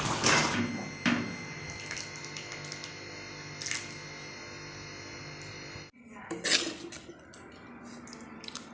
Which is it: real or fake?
real